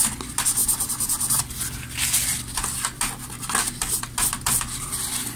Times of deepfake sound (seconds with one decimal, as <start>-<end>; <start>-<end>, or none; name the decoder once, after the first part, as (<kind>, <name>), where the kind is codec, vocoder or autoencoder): none